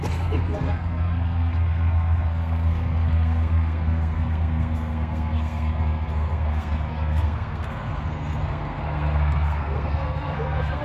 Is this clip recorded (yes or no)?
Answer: no